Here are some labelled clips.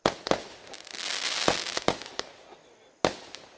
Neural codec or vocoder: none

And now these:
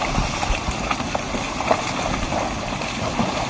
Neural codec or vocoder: none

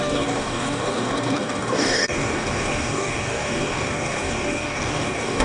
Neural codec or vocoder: codec, DAC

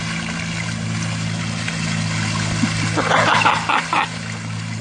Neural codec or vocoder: none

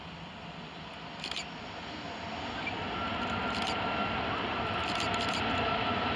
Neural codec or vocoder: none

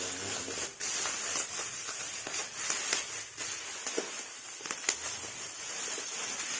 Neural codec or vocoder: none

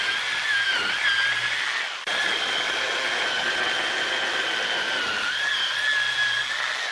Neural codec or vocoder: none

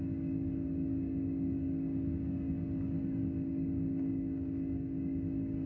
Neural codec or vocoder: codec, DAC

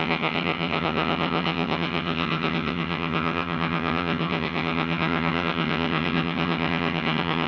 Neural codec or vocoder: vocoder, HiFi-GAN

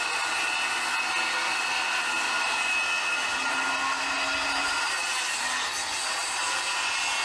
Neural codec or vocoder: none